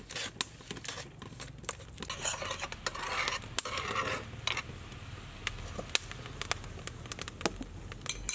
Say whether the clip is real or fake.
real